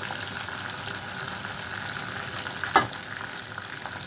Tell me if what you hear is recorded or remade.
recorded